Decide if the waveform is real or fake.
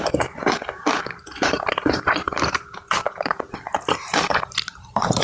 fake